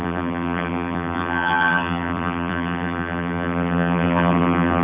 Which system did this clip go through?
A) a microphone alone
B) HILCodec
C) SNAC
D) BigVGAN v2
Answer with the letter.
D